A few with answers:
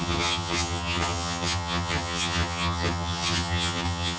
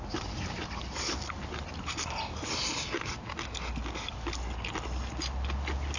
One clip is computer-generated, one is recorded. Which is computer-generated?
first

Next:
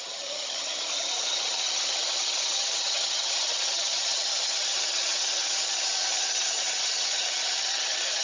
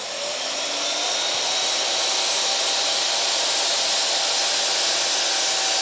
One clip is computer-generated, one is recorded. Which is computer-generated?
first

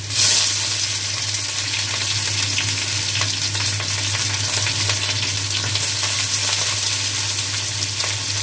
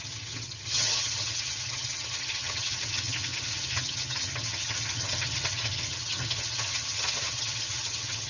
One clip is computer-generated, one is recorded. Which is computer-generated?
second